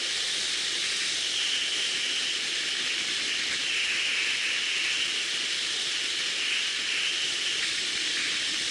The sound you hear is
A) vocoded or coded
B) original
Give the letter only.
B